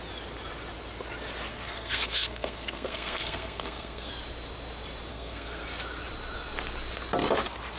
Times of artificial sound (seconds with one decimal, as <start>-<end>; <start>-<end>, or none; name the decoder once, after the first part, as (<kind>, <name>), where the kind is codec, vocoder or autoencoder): 1.5-4.1 (codec, SNAC); 5.1-5.6